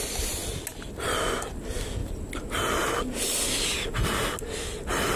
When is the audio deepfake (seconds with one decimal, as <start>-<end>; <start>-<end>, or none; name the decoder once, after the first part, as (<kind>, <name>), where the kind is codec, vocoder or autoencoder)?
none